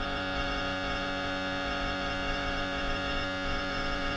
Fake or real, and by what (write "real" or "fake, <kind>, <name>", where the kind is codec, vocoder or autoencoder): fake, vocoder, Vocos